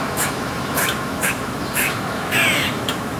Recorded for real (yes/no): no